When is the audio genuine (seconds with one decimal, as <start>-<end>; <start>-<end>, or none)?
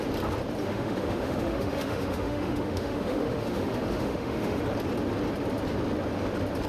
0.0-0.6; 4.6-6.7